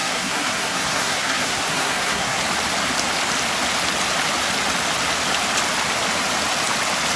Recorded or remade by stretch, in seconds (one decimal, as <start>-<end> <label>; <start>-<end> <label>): 0.0-2.4 remade; 2.4-7.2 recorded